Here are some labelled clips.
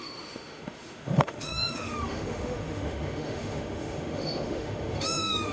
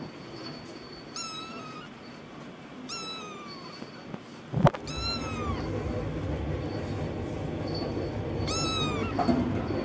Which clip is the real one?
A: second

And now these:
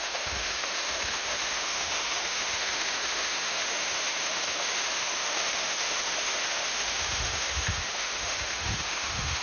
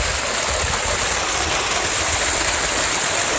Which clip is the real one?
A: second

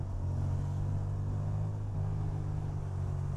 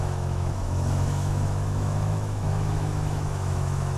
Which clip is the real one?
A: first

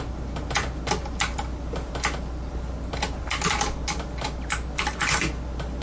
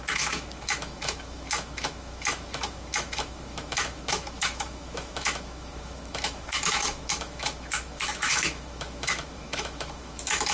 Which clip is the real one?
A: first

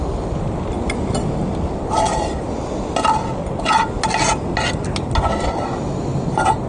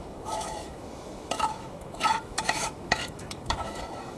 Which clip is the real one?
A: first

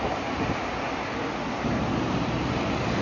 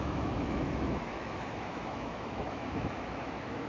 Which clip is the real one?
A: first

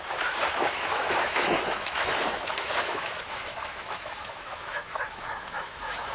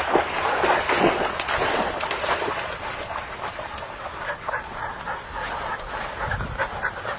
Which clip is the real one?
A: second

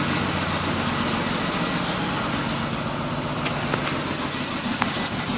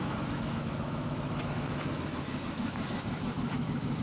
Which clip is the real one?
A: first